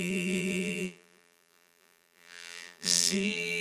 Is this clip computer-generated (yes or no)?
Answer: yes